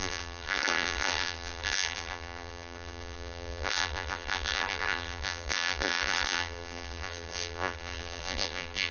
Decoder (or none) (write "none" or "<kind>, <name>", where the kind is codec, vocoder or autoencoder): vocoder, BigVGAN v2